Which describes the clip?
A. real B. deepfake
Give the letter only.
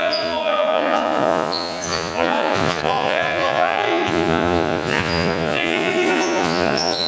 B